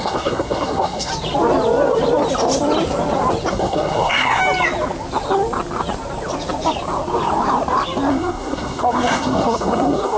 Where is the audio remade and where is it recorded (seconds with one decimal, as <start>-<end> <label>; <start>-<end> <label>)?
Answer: 0.0-1.1 remade; 1.1-3.5 recorded; 3.5-4.4 remade; 4.4-8.1 recorded; 8.1-10.2 remade